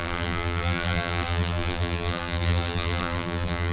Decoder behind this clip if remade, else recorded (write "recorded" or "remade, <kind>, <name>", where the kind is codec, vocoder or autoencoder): remade, vocoder, BigVGAN v2